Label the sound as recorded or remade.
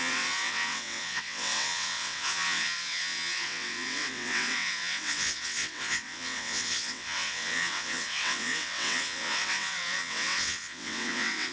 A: remade